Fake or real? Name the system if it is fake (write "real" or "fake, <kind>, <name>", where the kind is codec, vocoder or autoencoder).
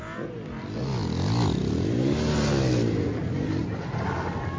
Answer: real